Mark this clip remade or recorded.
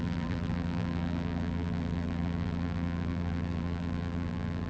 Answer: remade